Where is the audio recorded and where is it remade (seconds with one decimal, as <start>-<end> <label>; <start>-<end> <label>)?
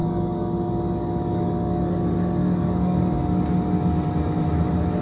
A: 0.0-3.0 remade; 3.0-5.0 recorded